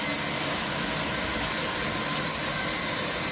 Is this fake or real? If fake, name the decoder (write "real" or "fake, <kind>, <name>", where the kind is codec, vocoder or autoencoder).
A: real